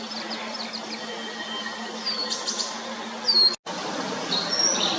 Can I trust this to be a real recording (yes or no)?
yes